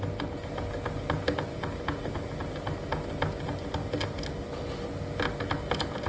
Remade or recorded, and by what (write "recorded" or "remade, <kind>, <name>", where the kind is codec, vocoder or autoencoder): recorded